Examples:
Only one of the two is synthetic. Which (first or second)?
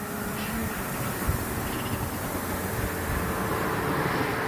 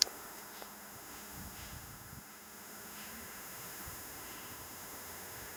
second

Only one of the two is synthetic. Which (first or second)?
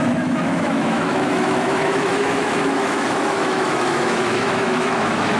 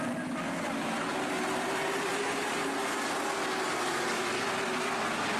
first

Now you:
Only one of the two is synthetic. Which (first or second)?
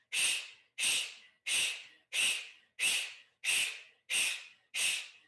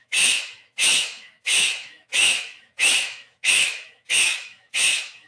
second